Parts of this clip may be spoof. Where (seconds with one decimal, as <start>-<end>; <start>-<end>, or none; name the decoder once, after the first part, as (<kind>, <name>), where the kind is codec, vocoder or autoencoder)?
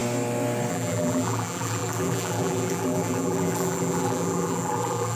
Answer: 0.7-5.2 (vocoder, BigVGAN v2)